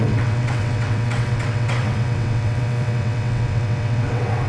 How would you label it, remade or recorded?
remade